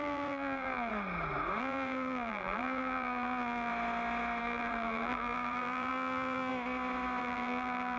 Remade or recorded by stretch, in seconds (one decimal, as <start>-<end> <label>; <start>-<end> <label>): 0.0-0.9 remade; 0.9-1.6 recorded; 1.6-3.7 remade; 3.7-4.4 recorded; 4.4-6.5 remade; 6.5-7.2 recorded; 7.2-8.0 remade

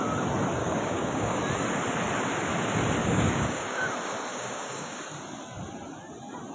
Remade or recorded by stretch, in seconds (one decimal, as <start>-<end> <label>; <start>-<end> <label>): 0.0-0.6 recorded; 0.6-1.4 remade; 1.4-3.0 recorded; 3.0-3.9 remade; 3.9-4.3 recorded; 4.3-5.0 remade; 5.0-6.5 recorded

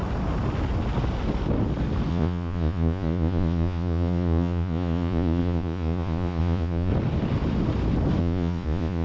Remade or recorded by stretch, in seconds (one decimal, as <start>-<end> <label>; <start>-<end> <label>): 0.0-2.1 recorded; 2.1-6.9 remade; 6.9-8.2 recorded; 8.2-9.0 remade

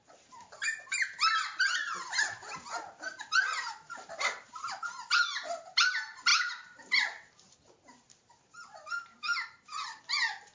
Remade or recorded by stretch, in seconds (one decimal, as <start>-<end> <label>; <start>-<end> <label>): 0.0-2.4 recorded; 2.4-5.3 remade; 5.3-6.3 recorded; 6.3-10.0 remade; 10.0-10.5 recorded

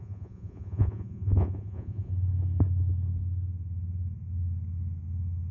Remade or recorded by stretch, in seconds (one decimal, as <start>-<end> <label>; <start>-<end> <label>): 0.0-2.1 remade; 2.1-5.5 recorded

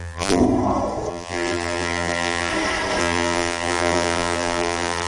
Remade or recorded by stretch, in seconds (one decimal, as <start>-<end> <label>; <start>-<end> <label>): 0.0-0.4 remade; 0.4-1.1 recorded; 1.1-2.5 remade; 2.5-3.0 recorded; 3.0-5.1 remade

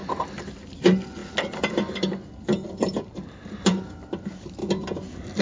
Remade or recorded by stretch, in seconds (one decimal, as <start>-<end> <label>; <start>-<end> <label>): 0.0-0.7 recorded; 0.7-1.2 remade; 1.2-3.1 recorded; 3.1-4.6 remade; 4.6-5.4 recorded

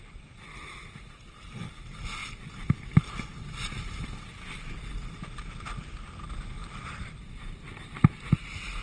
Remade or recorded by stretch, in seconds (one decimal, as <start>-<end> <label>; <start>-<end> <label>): 0.0-8.8 recorded